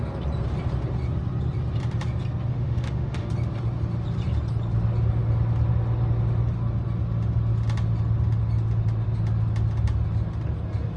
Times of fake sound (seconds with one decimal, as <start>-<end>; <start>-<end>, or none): 2.5-3.3